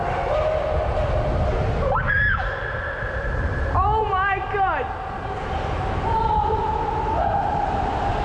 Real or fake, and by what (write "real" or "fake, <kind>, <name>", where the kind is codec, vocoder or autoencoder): real